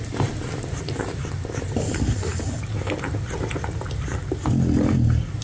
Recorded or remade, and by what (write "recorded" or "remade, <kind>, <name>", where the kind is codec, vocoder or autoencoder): recorded